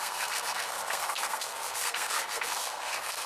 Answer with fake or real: fake